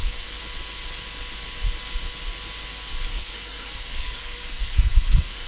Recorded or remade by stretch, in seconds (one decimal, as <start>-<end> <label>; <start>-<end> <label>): 0.0-0.4 remade; 0.4-3.1 recorded; 3.1-5.5 remade